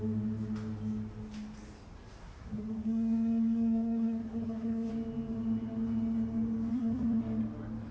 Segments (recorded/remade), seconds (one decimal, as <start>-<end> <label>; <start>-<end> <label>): 0.0-2.2 recorded; 2.2-4.9 remade; 4.9-6.7 recorded; 6.7-7.2 remade; 7.2-7.9 recorded